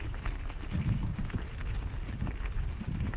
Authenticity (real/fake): real